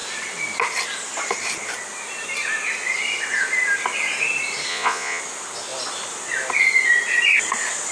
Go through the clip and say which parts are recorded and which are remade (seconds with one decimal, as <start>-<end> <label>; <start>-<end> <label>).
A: 0.0-4.7 recorded; 4.7-5.2 remade; 5.2-7.9 recorded